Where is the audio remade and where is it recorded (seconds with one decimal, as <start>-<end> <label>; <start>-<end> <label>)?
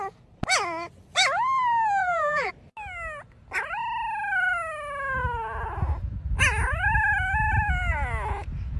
0.0-2.0 recorded; 2.0-2.5 remade; 2.5-8.8 recorded